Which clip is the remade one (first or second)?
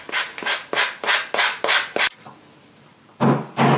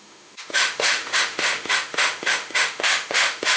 second